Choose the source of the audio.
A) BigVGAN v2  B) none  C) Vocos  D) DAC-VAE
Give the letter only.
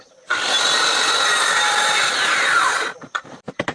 A